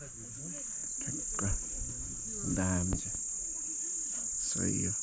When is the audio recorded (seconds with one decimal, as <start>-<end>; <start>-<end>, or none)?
0.0-5.0